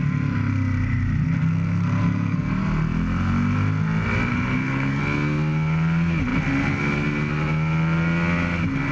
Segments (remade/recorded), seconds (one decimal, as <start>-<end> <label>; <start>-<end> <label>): 0.0-1.4 recorded; 1.4-2.5 remade; 2.5-4.3 recorded; 4.3-5.0 remade; 5.0-8.9 recorded